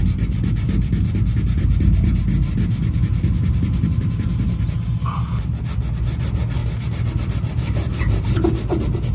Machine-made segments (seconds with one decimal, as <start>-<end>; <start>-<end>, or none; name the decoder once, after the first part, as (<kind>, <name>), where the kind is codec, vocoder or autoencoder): none